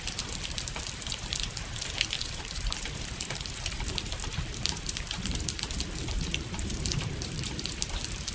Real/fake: real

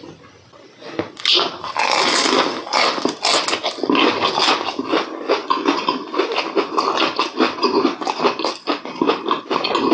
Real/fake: real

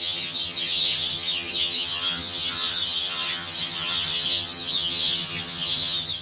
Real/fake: fake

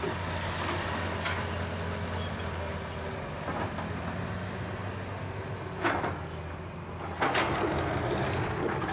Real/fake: real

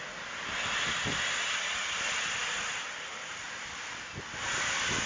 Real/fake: real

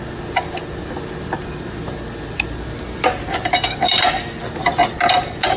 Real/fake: real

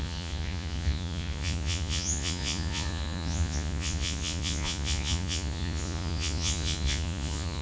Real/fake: fake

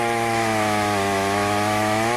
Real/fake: fake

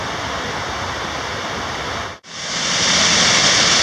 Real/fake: real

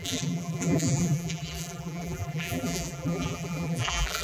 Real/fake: fake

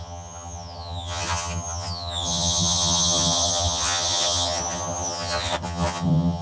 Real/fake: fake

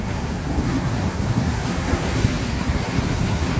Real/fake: fake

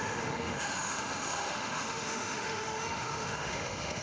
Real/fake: fake